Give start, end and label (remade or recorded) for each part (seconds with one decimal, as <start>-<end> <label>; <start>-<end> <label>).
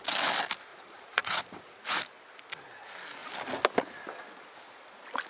0.0-0.7 recorded; 0.7-2.0 remade; 2.0-5.3 recorded